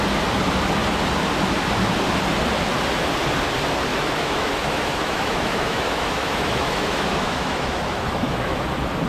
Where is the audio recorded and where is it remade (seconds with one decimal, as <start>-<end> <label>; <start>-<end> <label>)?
0.0-3.9 recorded; 3.9-8.6 remade; 8.6-9.1 recorded